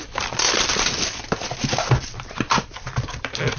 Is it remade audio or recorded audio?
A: remade